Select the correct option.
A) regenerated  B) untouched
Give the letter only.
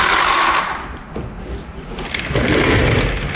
B